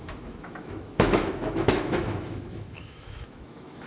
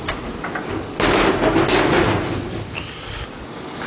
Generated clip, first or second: first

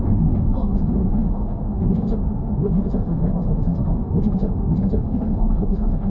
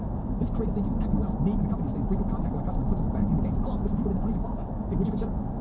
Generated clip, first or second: first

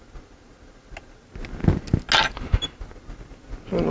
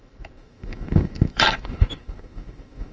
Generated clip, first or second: second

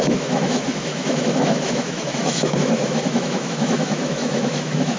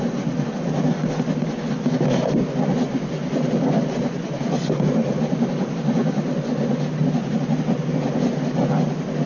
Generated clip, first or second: first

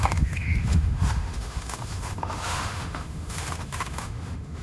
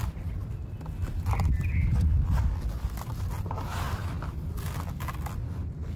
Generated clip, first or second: first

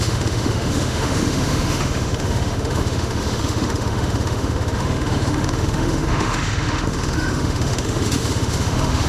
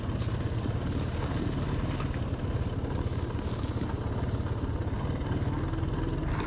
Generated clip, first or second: first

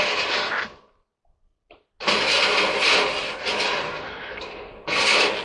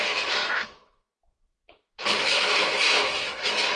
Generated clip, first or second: second